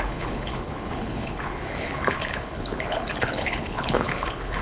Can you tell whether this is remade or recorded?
remade